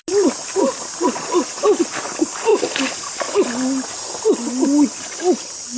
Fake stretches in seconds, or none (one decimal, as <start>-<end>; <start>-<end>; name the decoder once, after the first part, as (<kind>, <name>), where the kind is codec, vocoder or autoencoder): none